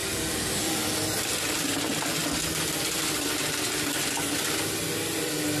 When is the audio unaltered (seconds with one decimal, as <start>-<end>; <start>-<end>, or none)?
0.0-5.6